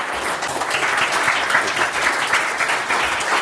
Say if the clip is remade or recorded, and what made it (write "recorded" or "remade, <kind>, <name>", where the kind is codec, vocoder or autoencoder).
recorded